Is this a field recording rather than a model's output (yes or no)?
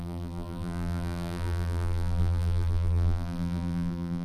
no